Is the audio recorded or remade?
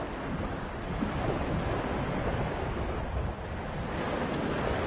recorded